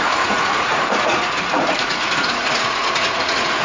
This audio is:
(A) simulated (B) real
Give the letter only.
A